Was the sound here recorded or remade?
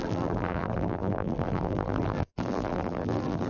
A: remade